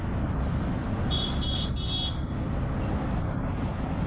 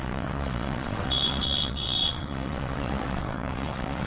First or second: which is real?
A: first